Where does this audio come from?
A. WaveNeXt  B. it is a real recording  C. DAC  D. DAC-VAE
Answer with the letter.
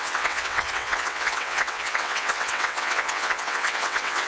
A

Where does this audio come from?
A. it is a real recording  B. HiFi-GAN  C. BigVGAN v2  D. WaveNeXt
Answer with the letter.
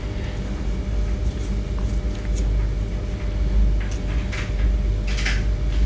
A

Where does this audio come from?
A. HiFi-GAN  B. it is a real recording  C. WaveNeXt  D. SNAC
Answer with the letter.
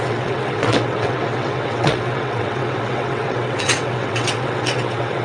C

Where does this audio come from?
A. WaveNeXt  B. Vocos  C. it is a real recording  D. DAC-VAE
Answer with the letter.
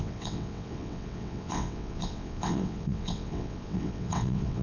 A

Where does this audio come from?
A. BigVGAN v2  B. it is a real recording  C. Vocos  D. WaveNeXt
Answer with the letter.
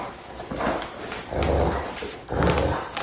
B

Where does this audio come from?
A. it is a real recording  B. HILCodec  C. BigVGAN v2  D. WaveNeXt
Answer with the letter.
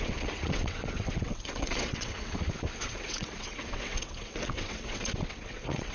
D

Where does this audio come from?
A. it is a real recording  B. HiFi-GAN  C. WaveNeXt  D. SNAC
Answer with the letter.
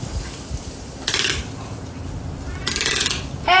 A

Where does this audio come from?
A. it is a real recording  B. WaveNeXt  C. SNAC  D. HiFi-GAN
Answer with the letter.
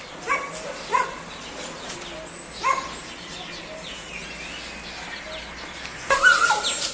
A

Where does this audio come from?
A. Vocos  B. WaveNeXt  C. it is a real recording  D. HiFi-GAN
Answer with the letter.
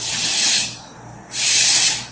C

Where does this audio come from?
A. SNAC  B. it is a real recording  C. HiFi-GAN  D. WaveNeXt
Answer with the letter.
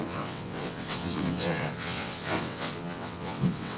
D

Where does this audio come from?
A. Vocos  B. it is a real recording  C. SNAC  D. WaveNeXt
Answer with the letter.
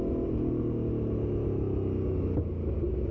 B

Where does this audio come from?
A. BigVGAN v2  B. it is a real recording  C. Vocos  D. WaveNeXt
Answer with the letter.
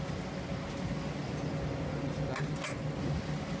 B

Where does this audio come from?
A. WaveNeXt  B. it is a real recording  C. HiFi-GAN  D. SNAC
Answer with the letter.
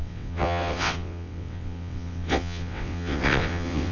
A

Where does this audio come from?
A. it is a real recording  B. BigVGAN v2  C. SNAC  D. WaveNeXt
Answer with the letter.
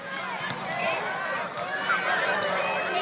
A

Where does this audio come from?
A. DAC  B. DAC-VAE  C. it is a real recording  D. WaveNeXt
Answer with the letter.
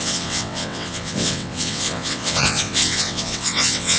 D